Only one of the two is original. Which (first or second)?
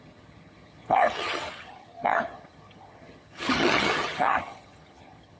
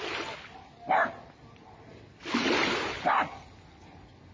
second